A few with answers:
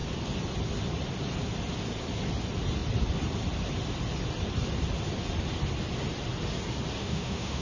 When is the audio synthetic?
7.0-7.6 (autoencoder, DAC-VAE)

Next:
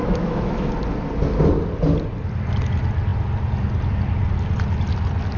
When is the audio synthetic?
0.0-0.7 (autoencoder, DAC-VAE)

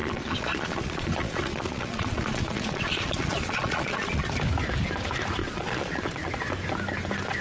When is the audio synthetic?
0.0-4.3 (vocoder, Vocos); 5.4-6.3

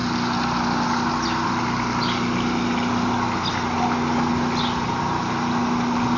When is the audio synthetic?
none